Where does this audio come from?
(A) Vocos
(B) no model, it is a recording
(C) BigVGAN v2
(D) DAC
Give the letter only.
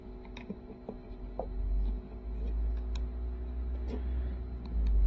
B